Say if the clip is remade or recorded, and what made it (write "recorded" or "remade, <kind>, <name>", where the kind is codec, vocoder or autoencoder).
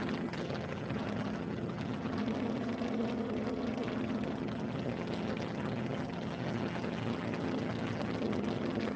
remade, vocoder, HiFi-GAN